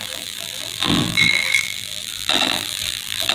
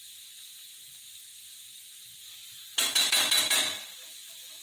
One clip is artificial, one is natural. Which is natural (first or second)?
second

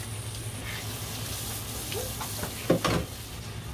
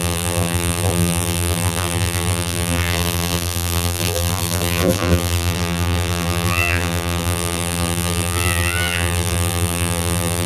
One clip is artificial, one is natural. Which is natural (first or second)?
first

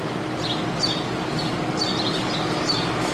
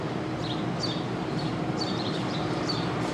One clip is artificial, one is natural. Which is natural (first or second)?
first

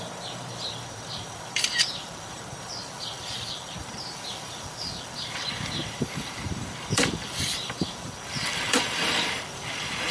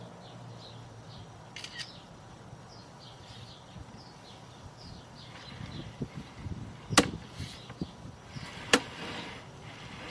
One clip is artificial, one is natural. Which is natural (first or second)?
second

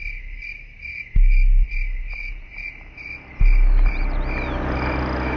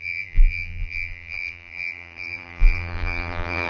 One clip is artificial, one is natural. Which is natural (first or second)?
first